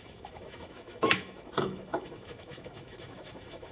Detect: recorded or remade remade